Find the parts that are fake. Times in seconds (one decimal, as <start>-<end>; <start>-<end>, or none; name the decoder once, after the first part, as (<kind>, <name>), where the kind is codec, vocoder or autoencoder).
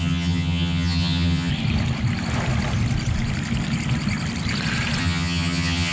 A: 0.0-1.5 (vocoder, HiFi-GAN); 5.0-5.9